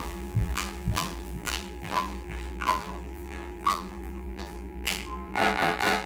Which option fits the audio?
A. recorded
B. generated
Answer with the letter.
B